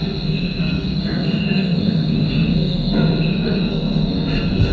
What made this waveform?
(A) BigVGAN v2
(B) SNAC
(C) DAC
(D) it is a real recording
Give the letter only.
B